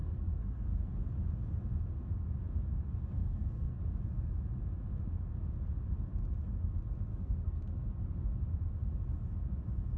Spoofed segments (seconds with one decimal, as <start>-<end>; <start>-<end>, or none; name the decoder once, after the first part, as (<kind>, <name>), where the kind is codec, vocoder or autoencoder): 0.0-0.8 (codec, SNAC); 3.2-3.8; 7.1-7.6